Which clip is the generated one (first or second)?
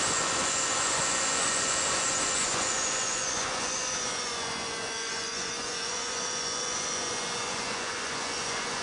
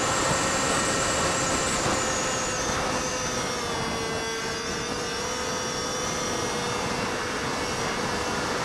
first